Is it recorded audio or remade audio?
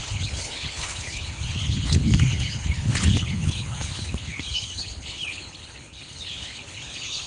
remade